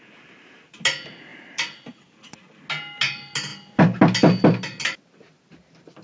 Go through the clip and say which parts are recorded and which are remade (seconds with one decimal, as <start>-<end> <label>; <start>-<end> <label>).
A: 0.0-1.3 recorded; 1.3-1.8 remade; 1.8-6.0 recorded